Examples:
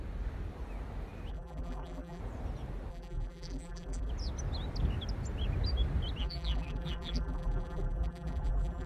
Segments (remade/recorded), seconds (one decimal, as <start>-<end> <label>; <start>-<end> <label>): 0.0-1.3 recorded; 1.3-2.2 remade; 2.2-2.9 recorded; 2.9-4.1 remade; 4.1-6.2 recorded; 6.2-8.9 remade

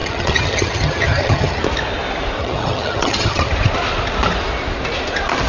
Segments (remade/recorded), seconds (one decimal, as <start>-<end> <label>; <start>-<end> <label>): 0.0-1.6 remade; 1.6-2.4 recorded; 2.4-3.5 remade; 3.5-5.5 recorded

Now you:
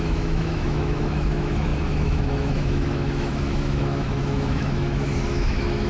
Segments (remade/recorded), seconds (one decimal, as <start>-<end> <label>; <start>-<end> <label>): 0.0-5.9 remade